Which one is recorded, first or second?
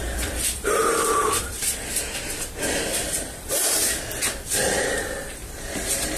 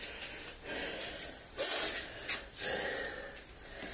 second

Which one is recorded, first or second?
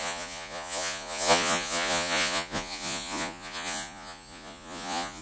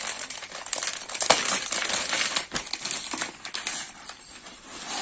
second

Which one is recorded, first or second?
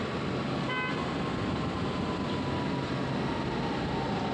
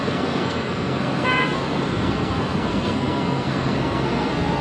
first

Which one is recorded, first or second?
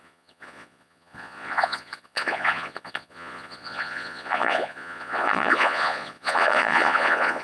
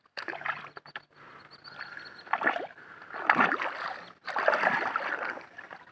second